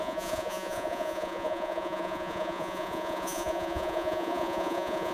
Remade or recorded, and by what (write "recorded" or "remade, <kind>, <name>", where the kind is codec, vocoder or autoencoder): remade, vocoder, Vocos